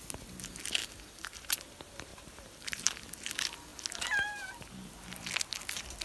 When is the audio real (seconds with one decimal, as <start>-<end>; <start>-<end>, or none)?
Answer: 0.0-0.8; 1.5-2.1; 3.0-6.0

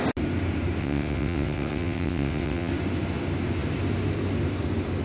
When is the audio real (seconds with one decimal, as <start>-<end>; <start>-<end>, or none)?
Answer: 0.0-0.8; 2.7-5.0